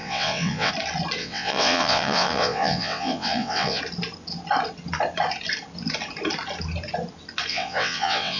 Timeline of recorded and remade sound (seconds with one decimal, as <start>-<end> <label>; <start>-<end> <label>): 0.0-0.7 remade; 0.7-1.2 recorded; 1.2-3.8 remade; 3.8-7.5 recorded; 7.5-8.4 remade